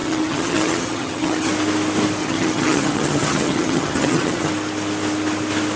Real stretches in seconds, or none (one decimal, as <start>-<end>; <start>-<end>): 1.5-2.2; 4.5-5.8